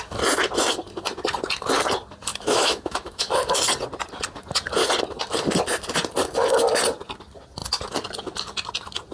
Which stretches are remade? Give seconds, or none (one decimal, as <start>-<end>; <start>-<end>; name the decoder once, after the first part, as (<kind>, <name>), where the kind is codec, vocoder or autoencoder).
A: 2.3-3.3 (autoencoder, DAC-VAE)